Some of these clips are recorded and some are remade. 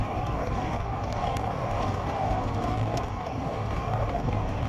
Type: remade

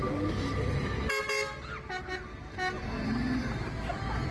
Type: recorded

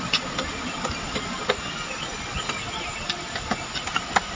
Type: recorded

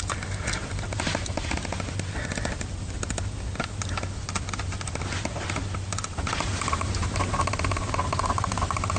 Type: recorded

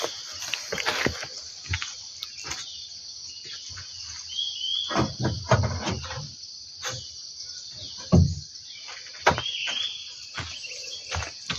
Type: recorded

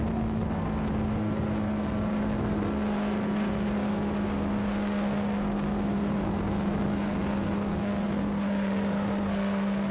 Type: remade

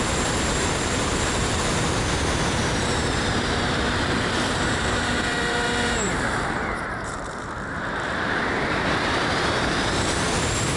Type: remade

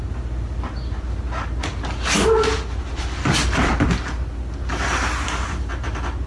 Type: recorded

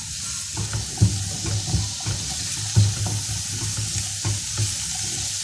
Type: recorded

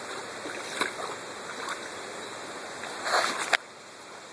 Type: recorded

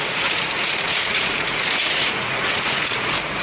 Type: remade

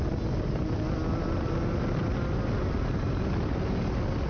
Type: recorded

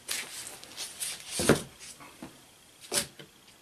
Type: recorded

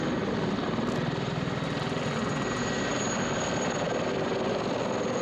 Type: recorded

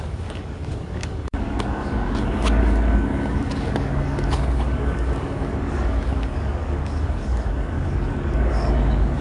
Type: remade